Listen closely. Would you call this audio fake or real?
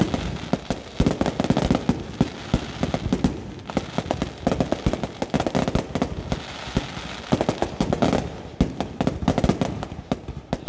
real